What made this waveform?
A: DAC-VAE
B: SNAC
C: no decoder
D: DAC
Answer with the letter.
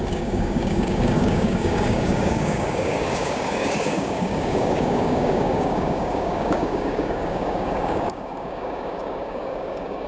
D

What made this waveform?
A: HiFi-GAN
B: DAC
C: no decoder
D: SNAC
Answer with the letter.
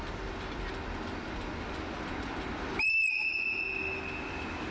C